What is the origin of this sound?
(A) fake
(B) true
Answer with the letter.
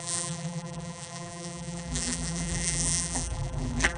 A